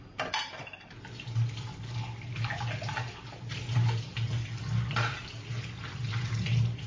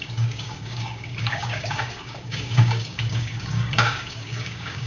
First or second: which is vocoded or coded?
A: second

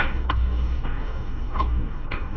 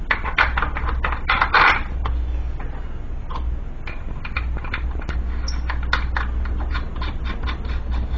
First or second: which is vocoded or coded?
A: first